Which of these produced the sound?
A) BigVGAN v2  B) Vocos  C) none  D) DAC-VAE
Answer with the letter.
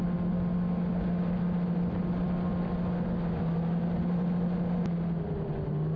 C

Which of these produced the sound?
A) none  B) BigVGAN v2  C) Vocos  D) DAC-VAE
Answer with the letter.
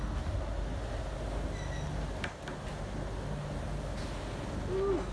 A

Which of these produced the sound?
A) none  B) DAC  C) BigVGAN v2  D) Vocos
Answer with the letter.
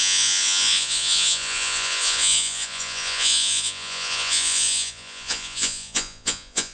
D